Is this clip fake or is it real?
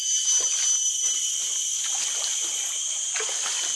real